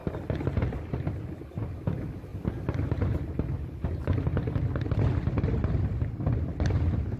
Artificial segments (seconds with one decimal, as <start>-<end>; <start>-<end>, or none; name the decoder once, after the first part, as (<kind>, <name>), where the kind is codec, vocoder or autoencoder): none